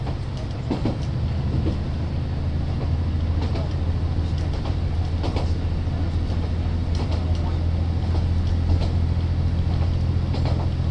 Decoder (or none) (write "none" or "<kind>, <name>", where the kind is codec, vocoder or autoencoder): none